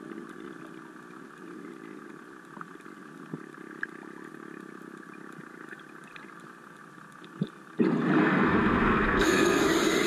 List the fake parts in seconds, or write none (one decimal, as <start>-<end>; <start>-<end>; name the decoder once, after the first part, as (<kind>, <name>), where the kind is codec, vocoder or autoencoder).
8.2-9.6 (codec, SNAC)